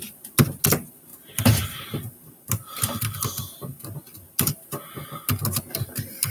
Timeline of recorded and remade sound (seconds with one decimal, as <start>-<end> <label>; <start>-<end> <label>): 0.0-6.3 recorded

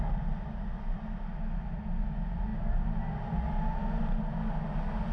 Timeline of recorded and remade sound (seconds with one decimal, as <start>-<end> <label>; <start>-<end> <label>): 0.0-5.1 recorded

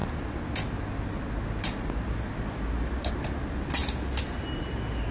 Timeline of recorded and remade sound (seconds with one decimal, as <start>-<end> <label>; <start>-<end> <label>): 0.0-5.1 recorded

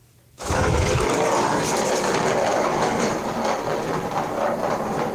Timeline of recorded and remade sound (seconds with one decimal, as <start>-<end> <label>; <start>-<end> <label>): 0.0-1.0 remade; 1.0-2.5 recorded; 2.5-3.0 remade; 3.0-5.1 recorded

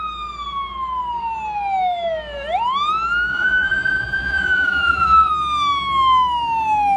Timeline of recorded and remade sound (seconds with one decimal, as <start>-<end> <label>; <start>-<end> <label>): 0.0-3.3 recorded; 3.3-5.3 remade; 5.3-7.0 recorded

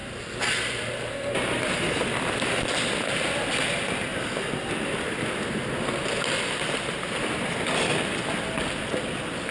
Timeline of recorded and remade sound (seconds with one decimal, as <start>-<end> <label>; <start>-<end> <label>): 0.0-9.5 recorded

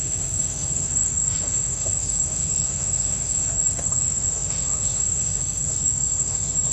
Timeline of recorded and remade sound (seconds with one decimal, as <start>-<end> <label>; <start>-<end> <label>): 0.0-6.7 remade

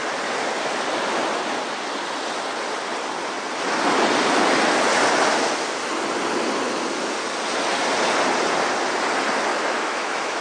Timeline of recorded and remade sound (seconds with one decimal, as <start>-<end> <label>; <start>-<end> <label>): 0.0-9.5 recorded; 9.5-10.4 remade